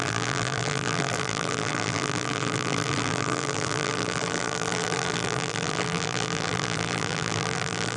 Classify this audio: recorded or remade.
remade